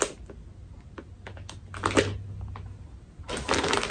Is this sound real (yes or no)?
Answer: yes